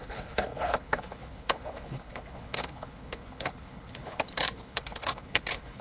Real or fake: fake